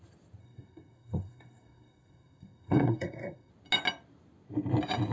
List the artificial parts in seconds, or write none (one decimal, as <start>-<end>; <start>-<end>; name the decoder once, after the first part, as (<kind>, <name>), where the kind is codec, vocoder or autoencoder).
0.4-3.5 (codec, SNAC)

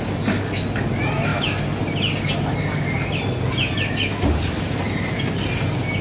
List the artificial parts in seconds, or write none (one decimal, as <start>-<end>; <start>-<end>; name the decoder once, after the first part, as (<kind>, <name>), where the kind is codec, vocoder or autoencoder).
none

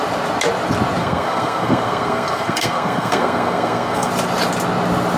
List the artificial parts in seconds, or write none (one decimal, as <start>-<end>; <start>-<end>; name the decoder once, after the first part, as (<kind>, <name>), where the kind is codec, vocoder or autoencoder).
1.0-4.1 (codec, SNAC)

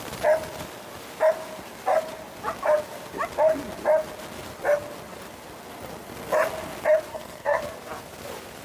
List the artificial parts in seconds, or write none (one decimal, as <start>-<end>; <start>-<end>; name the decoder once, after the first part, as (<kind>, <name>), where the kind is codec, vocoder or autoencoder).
7.1-7.6 (codec, SNAC)